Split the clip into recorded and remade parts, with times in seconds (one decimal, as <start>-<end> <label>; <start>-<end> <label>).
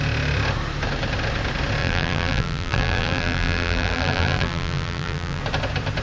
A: 0.0-1.8 recorded; 1.8-5.4 remade; 5.4-6.0 recorded